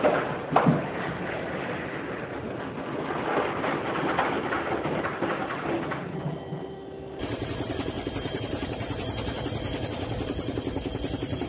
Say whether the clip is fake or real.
real